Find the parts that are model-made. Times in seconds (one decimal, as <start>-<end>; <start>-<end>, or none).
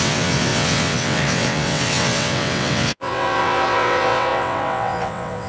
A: 0.0-5.5